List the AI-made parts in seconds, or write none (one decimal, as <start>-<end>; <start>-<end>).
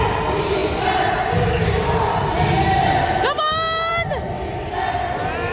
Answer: none